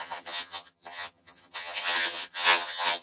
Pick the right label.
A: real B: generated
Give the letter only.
B